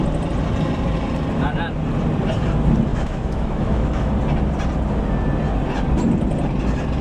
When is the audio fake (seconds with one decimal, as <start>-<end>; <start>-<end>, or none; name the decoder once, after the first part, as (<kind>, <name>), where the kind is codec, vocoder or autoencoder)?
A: 2.9-4.1 (autoencoder, DAC-VAE)